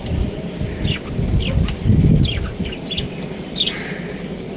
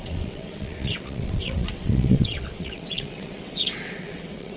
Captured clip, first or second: first